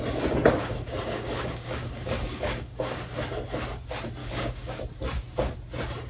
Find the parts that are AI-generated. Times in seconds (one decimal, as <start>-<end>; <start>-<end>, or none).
0.6-3.2; 4.2-4.8